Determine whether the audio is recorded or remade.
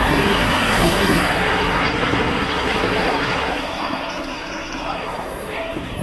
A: remade